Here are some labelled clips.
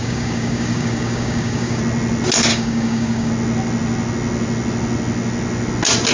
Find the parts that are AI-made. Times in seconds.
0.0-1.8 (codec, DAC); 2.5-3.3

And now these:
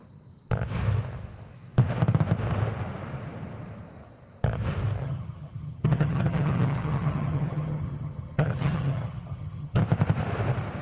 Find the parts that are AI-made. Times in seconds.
5.0-9.8 (vocoder, HiFi-GAN)

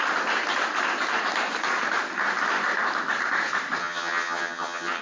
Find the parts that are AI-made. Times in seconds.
3.8-5.0 (vocoder, HiFi-GAN)

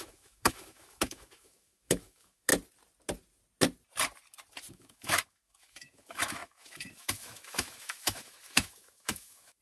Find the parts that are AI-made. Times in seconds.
0.0-2.5 (autoencoder, DAC-VAE); 4.7-9.6

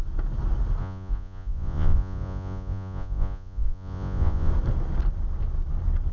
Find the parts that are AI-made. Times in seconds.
0.8-4.5 (vocoder, Vocos)

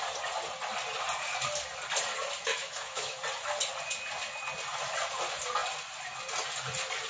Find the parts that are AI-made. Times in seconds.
2.5-3.2 (autoencoder, DAC-VAE)

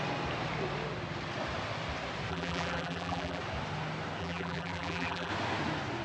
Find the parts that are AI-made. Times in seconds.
2.3-3.4 (vocoder, BigVGAN v2); 4.2-5.3

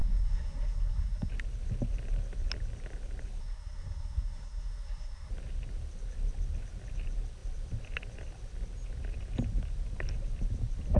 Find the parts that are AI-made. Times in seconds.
0.0-1.3 (codec, SNAC); 3.4-5.3